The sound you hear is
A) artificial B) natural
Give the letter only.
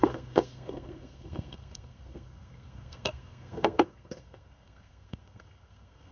A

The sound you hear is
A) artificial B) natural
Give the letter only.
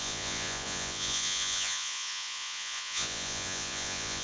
A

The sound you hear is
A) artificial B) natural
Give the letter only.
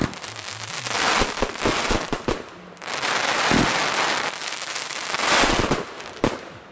B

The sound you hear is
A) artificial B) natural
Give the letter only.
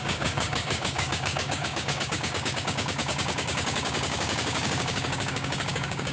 A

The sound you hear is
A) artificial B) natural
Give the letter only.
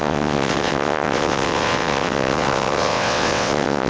A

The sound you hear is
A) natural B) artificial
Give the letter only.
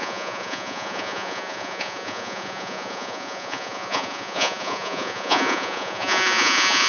B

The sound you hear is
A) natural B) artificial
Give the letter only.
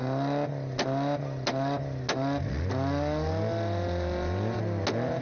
A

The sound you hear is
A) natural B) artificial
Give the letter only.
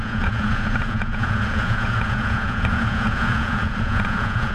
B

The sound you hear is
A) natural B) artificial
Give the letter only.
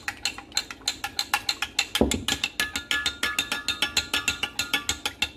A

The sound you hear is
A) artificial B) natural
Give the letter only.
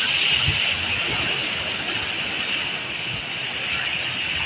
B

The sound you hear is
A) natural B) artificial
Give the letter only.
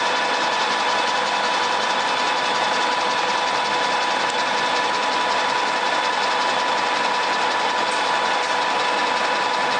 A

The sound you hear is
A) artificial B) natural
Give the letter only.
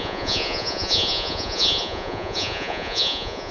A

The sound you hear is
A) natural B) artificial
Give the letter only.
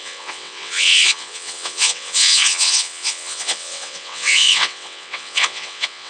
B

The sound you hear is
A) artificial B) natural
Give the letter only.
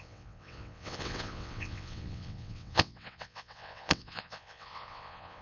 A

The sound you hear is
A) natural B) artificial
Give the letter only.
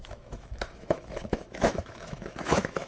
B